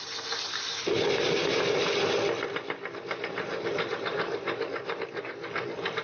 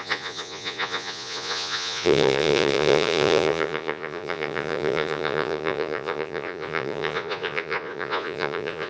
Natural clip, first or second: first